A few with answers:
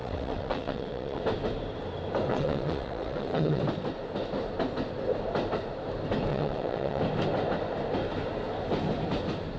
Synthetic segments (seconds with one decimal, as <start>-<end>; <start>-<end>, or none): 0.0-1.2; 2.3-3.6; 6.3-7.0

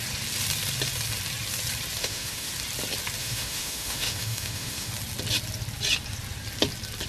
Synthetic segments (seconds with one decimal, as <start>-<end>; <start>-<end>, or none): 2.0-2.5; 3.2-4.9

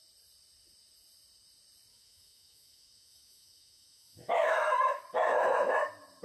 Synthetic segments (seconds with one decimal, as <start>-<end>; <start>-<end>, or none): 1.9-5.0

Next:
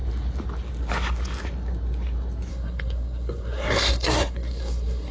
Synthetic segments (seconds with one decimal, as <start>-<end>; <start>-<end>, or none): 2.5-5.1